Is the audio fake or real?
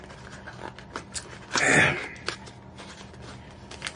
real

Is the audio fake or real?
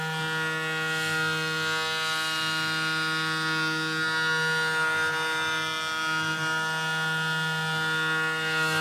real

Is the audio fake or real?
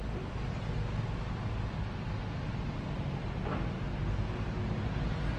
real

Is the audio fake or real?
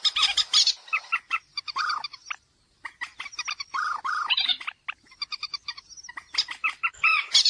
real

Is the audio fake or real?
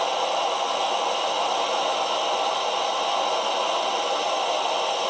real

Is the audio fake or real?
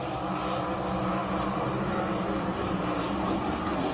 real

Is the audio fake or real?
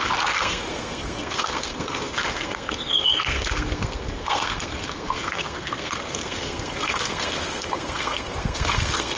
fake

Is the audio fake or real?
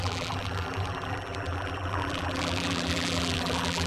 fake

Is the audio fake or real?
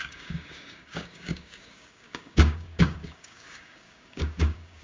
fake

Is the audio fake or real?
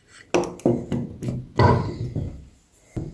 real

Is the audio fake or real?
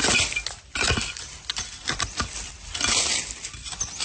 real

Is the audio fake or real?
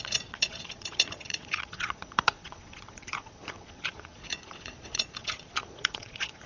fake